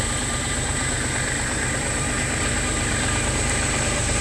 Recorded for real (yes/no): no